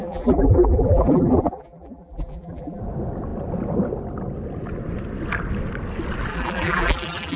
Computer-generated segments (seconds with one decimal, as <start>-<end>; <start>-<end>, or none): 0.0-2.8; 6.3-7.4